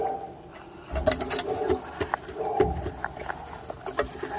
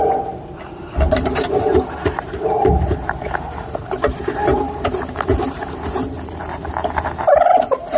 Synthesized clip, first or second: second